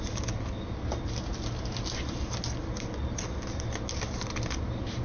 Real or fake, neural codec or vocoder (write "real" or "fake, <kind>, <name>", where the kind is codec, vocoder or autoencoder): real